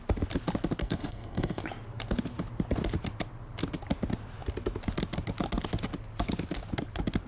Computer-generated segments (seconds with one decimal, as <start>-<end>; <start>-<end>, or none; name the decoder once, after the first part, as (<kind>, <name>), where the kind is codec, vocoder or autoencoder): 0.8-1.6 (codec, SNAC)